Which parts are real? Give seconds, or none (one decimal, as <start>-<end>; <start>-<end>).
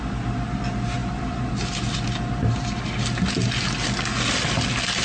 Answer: 0.0-1.0; 1.5-5.0